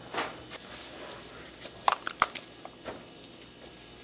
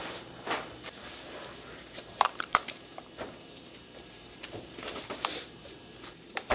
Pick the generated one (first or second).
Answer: second